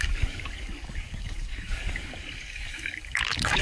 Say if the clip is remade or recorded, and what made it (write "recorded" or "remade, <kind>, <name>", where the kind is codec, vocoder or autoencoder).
remade, codec, DAC